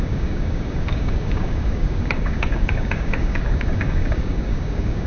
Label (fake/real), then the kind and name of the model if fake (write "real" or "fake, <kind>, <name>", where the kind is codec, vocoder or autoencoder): fake, codec, DAC